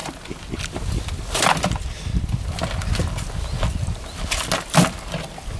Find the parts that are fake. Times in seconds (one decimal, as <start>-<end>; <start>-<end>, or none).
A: none